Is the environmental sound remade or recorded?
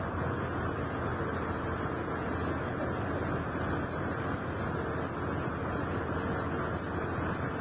recorded